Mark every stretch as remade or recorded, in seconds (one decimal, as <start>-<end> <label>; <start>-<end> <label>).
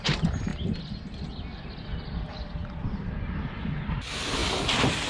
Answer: 0.0-5.1 recorded